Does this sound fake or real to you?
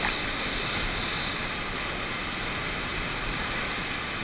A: real